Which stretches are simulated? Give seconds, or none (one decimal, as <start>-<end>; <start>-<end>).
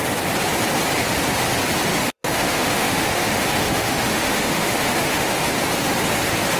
1.9-5.5